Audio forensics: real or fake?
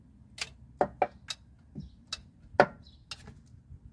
real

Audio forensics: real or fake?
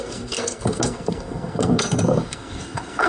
fake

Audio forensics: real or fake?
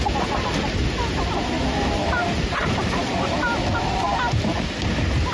real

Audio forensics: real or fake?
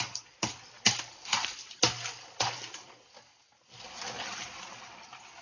real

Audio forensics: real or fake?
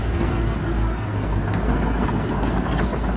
fake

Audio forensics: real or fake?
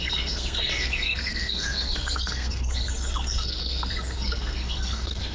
fake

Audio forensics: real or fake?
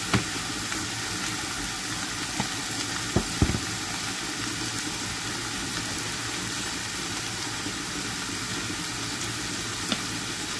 real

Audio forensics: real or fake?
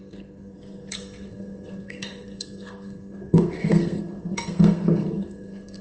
fake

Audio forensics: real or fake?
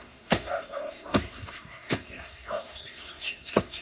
fake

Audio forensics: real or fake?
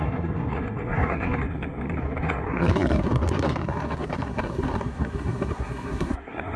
fake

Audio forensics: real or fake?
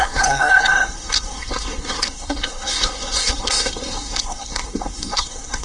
fake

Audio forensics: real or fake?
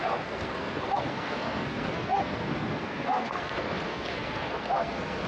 fake